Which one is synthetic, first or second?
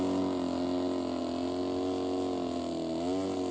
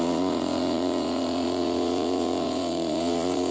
second